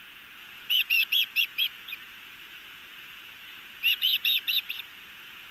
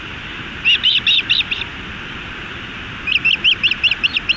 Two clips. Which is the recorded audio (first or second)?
second